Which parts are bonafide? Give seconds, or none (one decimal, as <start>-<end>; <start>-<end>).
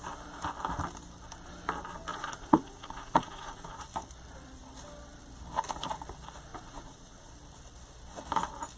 0.0-2.1; 3.8-6.5; 7.3-8.8